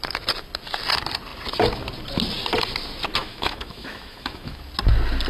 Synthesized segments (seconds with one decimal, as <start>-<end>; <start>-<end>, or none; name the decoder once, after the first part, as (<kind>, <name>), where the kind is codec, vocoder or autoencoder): 3.2-4.6 (autoencoder, DAC-VAE)